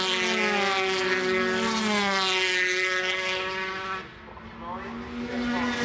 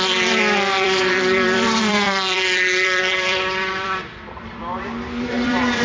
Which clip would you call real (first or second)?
first